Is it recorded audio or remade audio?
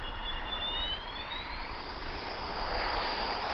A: remade